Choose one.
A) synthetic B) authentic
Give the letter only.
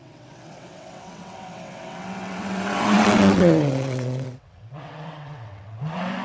A